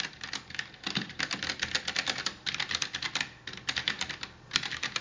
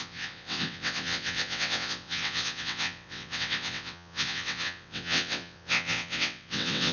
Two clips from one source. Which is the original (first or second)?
first